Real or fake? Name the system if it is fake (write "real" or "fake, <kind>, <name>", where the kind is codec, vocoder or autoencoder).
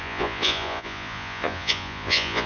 fake, vocoder, Vocos